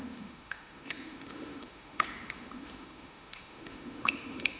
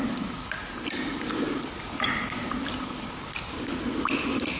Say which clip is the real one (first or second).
second